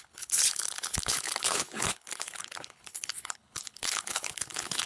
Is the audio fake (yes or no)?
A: yes